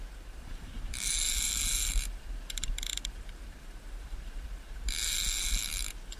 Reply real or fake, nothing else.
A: fake